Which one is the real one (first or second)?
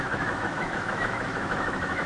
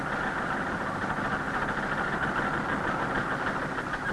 second